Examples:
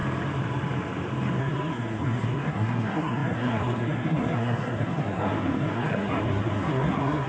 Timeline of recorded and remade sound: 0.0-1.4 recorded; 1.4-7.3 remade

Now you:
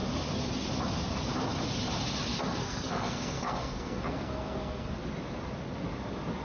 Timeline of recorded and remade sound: 0.0-2.3 recorded; 2.3-4.9 remade; 4.9-6.4 recorded

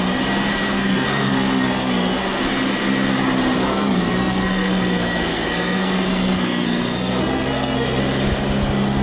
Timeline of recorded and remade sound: 0.0-0.5 recorded; 0.5-2.4 remade; 2.4-3.7 recorded; 3.7-8.0 remade; 8.0-9.0 recorded

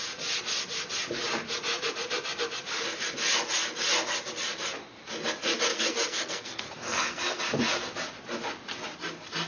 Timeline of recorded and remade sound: 0.0-5.7 recorded; 5.7-7.4 remade; 7.4-9.5 recorded

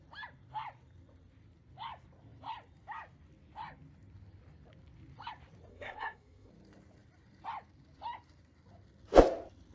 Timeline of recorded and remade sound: 0.0-5.7 recorded; 5.7-6.5 remade; 6.5-9.7 recorded